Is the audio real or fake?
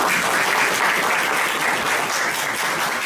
real